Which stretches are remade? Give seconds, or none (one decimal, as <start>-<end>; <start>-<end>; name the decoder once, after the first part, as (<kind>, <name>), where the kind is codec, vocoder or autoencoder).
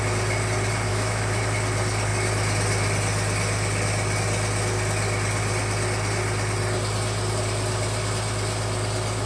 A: 0.9-1.4 (autoencoder, DAC-VAE)